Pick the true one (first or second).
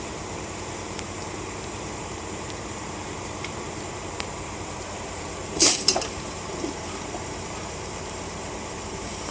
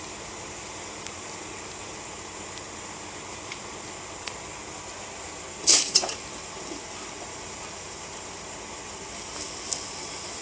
second